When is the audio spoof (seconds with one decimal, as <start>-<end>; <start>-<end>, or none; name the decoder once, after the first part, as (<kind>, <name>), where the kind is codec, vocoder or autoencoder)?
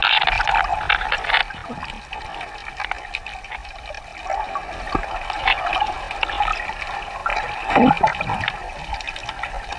none